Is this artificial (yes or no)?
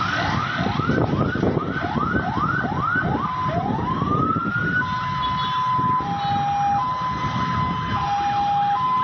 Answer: no